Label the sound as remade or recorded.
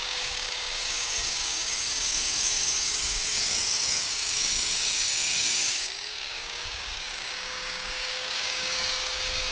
remade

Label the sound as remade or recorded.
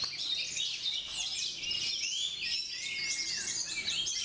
recorded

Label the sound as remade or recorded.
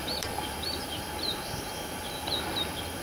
remade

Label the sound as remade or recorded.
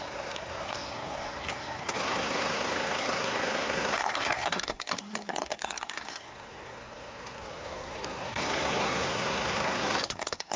remade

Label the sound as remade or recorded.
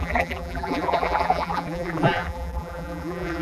remade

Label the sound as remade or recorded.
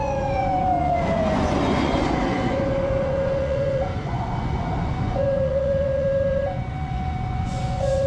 remade